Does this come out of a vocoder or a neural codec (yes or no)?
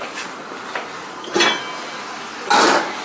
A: no